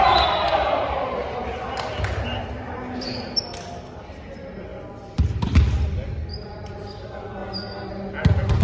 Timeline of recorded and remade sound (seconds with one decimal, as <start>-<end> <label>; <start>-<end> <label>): 0.0-0.5 remade; 0.5-4.3 recorded; 4.3-4.7 remade; 4.7-6.3 recorded; 6.3-7.4 remade; 7.4-8.6 recorded